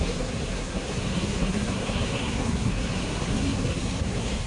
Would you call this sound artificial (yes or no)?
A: yes